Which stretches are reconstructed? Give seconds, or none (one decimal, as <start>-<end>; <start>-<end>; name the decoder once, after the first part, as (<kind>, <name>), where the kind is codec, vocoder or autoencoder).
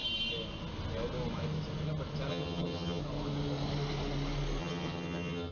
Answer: 2.3-3.0 (vocoder, HiFi-GAN); 4.6-5.5